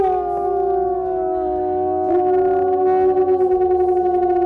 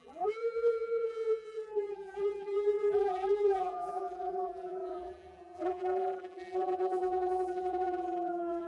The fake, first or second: second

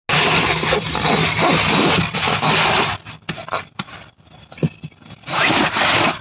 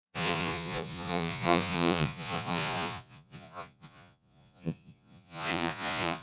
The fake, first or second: second